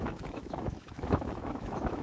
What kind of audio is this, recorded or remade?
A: remade